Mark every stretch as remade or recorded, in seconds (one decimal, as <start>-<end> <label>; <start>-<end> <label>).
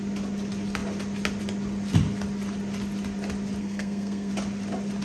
0.0-3.6 recorded; 3.6-4.3 remade; 4.3-5.0 recorded